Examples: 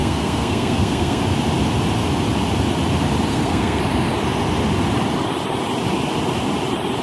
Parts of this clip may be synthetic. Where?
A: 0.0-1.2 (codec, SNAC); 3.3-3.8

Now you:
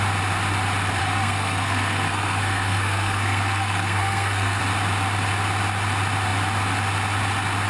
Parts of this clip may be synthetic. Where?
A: 1.0-4.6 (codec, SNAC)

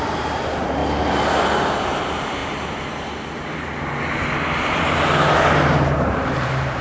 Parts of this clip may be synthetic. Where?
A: 0.0-0.8 (vocoder, BigVGAN v2); 1.8-2.4; 5.5-6.8